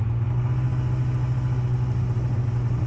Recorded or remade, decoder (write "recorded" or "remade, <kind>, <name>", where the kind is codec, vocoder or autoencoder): recorded